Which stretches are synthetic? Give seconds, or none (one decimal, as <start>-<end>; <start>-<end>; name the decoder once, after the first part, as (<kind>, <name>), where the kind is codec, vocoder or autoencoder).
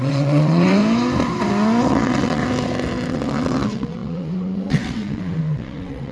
0.0-0.8 (vocoder, WaveNeXt); 1.8-2.4; 3.1-6.1